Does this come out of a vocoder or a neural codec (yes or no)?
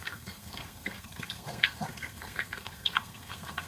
yes